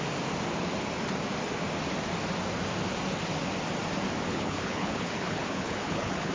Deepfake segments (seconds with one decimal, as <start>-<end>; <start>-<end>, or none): 4.3-6.3